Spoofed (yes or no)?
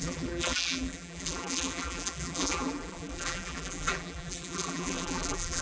yes